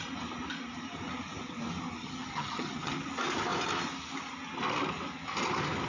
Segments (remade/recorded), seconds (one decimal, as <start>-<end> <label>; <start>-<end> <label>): 0.0-2.0 recorded; 2.0-2.9 remade; 2.9-5.9 recorded